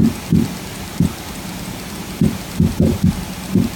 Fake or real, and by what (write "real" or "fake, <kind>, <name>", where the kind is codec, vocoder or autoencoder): fake, vocoder, BigVGAN v2